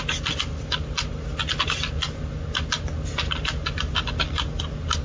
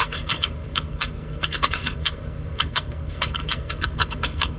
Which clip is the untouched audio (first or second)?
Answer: first